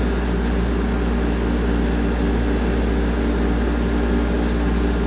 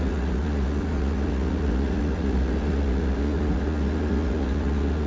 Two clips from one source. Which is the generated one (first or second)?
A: second